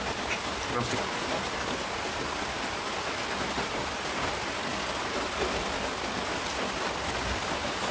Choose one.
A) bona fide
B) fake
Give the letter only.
A